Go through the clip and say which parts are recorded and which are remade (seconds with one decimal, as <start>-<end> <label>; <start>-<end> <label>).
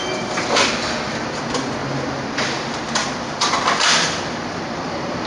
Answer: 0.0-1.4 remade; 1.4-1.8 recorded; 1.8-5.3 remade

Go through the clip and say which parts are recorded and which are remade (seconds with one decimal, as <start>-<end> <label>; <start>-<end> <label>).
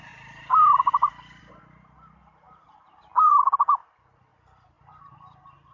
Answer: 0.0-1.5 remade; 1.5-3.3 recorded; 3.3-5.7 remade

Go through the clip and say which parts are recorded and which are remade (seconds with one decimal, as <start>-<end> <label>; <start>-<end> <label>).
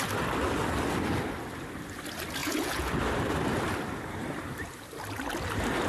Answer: 0.0-2.4 recorded; 2.4-2.9 remade; 2.9-5.9 recorded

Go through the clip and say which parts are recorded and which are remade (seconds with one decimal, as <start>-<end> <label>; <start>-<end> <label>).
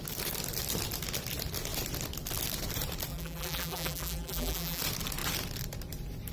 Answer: 0.0-3.1 recorded; 3.1-4.8 remade; 4.8-6.3 recorded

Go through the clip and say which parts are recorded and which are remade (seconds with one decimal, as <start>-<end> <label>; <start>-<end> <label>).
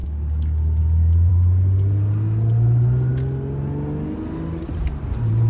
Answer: 0.0-1.3 remade; 1.3-5.5 recorded